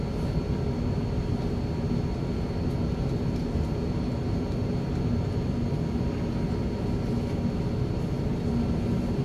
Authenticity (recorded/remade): recorded